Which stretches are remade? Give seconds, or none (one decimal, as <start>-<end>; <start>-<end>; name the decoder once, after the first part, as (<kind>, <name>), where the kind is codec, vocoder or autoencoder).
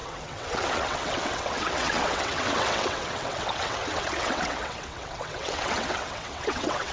0.0-6.9 (vocoder, WaveNeXt)